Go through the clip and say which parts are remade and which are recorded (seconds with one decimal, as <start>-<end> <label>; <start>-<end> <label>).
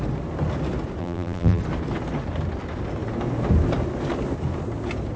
0.0-1.0 recorded; 1.0-1.6 remade; 1.6-5.2 recorded